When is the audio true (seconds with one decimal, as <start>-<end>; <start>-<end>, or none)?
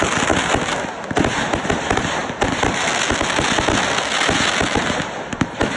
0.0-5.8